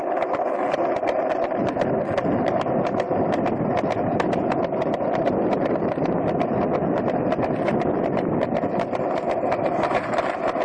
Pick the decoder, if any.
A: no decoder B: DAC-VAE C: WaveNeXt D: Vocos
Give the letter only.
A